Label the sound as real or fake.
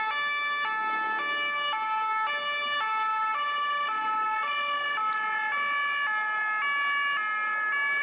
real